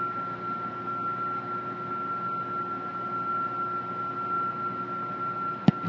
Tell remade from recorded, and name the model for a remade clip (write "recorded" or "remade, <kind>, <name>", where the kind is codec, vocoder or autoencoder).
recorded